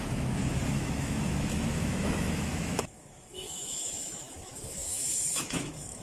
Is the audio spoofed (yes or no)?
yes